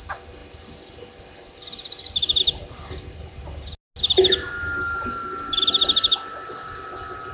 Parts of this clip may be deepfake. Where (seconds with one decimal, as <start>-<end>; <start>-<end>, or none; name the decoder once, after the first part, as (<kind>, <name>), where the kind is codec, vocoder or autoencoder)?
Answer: none